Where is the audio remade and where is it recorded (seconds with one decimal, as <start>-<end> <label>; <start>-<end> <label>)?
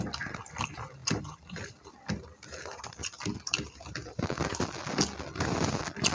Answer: 0.0-6.1 recorded